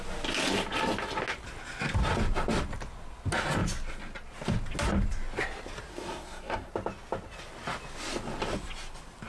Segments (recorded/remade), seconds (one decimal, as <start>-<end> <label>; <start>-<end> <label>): 0.0-5.9 recorded; 5.9-6.7 remade; 6.7-9.3 recorded